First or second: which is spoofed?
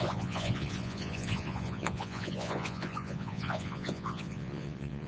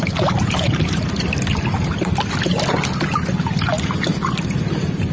first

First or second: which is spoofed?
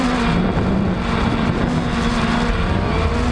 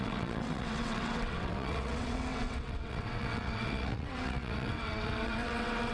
second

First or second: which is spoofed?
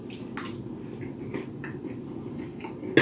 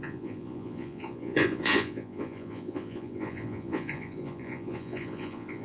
second